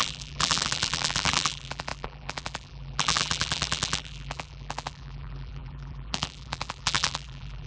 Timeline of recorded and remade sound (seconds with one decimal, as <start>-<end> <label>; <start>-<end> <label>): 0.0-7.7 remade